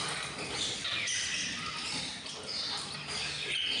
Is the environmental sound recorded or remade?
recorded